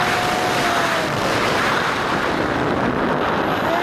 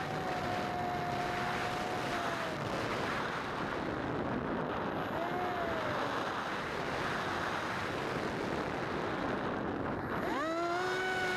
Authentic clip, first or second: second